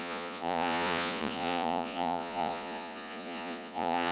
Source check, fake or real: fake